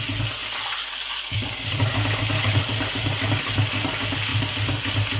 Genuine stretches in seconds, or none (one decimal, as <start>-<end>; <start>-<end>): 0.0-0.4; 2.6-4.3